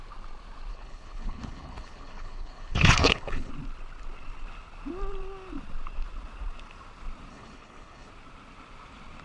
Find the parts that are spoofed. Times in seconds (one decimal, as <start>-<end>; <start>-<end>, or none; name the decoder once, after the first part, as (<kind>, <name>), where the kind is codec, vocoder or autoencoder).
0.7-3.5 (codec, HILCodec); 7.3-8.1